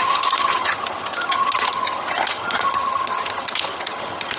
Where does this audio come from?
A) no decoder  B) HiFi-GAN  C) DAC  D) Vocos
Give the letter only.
B